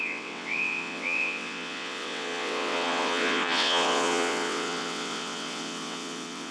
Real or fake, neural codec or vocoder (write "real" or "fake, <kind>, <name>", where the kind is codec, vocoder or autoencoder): fake, vocoder, WaveNeXt